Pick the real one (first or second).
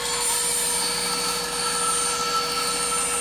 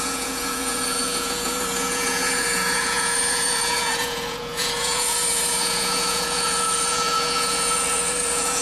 first